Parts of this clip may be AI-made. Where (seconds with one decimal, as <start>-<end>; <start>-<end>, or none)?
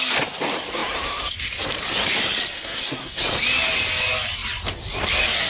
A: 2.5-3.2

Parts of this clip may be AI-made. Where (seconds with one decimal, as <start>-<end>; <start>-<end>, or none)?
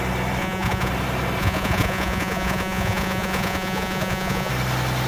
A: 0.4-0.9; 1.4-4.5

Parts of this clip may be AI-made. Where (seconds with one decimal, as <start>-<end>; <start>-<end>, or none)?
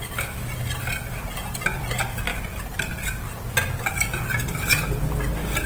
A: 2.3-3.3; 4.3-5.0